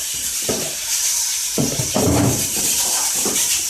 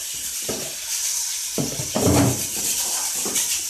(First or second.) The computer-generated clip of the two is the first